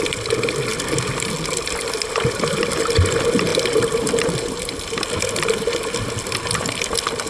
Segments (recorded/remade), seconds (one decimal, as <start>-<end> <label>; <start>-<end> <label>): 0.0-7.3 recorded